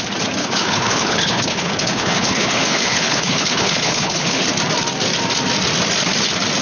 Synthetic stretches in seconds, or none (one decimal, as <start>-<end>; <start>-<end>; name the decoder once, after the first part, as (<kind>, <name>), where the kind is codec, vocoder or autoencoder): 0.4-4.4 (codec, HILCodec)